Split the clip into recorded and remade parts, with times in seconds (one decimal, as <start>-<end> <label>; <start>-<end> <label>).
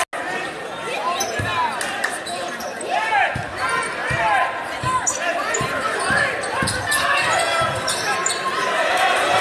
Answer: 0.0-8.2 recorded; 8.2-9.4 remade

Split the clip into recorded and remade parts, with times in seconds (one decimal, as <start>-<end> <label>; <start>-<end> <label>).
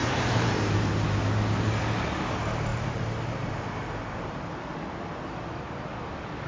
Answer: 0.0-1.2 remade; 1.2-2.7 recorded; 2.7-4.5 remade; 4.5-6.5 recorded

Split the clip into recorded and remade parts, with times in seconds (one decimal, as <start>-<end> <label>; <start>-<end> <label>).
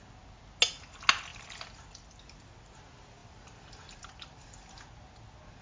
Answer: 0.0-1.3 recorded; 1.3-2.2 remade; 2.2-3.2 recorded; 3.2-4.9 remade; 4.9-5.6 recorded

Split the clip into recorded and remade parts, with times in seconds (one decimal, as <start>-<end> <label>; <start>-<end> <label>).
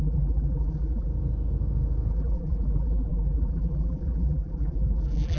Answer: 0.0-1.1 remade; 1.1-2.1 recorded; 2.1-5.4 remade